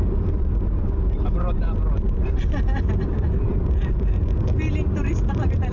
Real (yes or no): yes